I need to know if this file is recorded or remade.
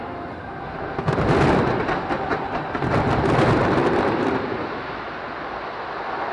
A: recorded